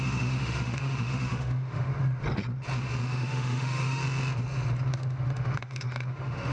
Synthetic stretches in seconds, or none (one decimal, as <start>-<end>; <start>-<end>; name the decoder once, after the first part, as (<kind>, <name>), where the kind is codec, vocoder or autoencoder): 0.0-1.9 (autoencoder, DAC-VAE); 3.0-4.0; 4.9-6.5